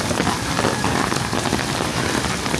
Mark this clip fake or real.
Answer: real